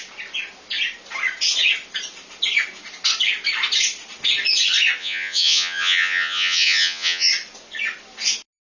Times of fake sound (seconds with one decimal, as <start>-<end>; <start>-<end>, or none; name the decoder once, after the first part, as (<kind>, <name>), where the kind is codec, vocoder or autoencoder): 5.0-7.3 (vocoder, Vocos)